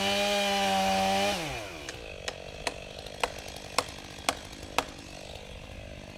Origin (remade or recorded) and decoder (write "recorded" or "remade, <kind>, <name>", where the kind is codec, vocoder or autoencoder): recorded